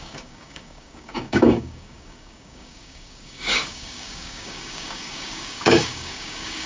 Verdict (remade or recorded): remade